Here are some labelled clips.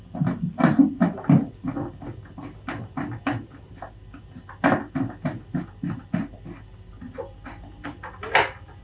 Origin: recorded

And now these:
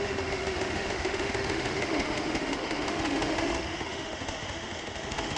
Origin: remade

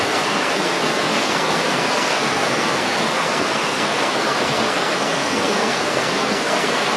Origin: remade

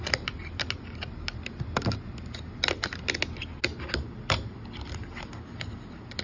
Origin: recorded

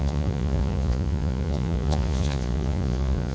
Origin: remade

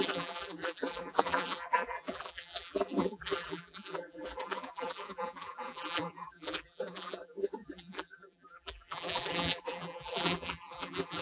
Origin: remade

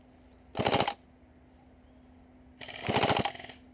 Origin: recorded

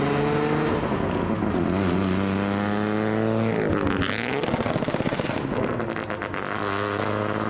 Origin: recorded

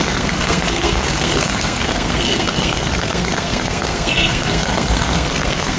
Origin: remade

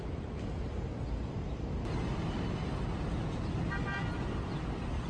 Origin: recorded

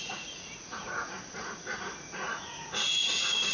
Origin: remade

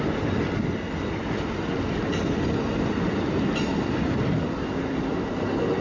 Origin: recorded